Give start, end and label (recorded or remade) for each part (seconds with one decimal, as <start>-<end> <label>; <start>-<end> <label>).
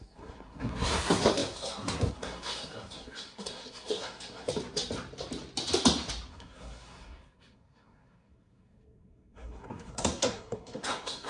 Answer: 0.0-4.5 remade; 4.5-6.3 recorded; 6.3-11.3 remade